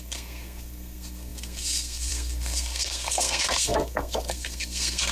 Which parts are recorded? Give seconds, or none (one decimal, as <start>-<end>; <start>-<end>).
none